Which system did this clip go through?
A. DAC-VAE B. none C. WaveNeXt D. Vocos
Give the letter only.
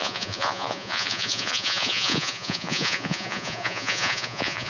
D